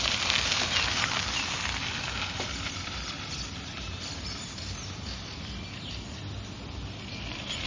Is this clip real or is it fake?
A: real